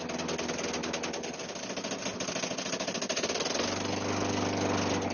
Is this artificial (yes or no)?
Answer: no